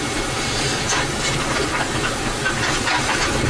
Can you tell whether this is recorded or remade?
recorded